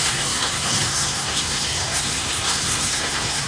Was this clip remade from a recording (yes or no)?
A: yes